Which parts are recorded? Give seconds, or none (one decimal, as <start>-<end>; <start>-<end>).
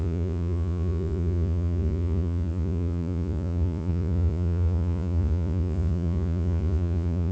none